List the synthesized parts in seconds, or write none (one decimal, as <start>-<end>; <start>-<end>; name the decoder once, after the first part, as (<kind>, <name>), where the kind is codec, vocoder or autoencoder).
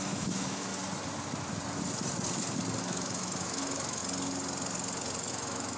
0.0-0.7 (autoencoder, DAC-VAE); 2.8-4.0; 5.3-5.8